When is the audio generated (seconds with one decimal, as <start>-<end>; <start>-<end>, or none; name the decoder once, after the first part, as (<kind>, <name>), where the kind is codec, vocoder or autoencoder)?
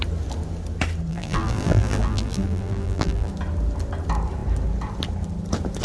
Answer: 1.1-3.3 (vocoder, BigVGAN v2)